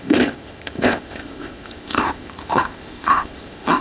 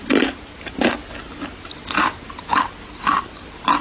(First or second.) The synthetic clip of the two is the first